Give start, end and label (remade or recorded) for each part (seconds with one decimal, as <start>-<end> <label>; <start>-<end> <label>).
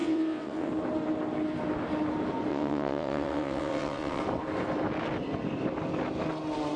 0.0-0.7 remade; 0.7-2.5 recorded; 2.5-4.2 remade; 4.2-6.8 recorded